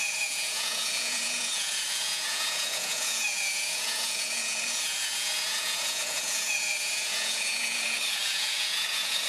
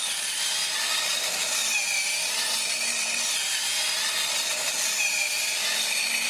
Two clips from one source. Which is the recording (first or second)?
second